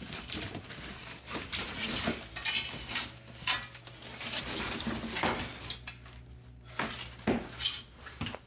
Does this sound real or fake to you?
real